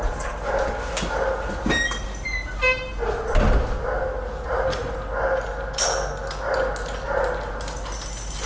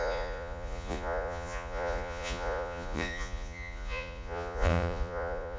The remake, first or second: second